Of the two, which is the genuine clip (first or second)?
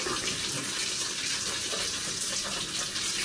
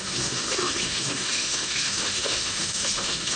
first